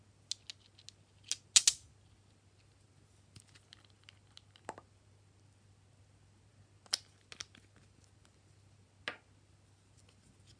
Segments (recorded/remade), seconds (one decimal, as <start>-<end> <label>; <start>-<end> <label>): 0.0-10.6 recorded